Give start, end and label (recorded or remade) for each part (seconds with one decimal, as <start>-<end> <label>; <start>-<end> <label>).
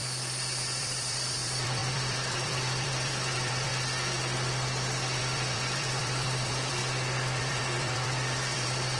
0.0-0.8 recorded; 0.8-3.7 remade; 3.7-5.2 recorded; 5.2-6.8 remade; 6.8-7.4 recorded; 7.4-9.0 remade